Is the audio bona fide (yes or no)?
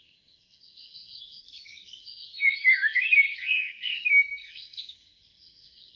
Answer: no